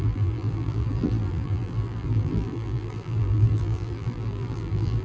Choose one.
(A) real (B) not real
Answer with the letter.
B